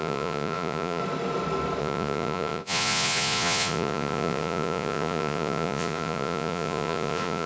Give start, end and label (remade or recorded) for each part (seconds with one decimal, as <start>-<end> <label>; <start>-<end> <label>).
0.0-1.0 remade; 1.0-1.8 recorded; 1.8-7.5 remade